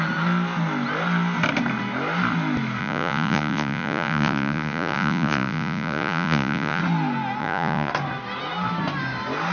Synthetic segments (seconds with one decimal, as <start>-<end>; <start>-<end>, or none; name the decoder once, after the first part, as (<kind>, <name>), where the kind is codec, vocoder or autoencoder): 2.8-6.8 (vocoder, Vocos); 7.4-7.9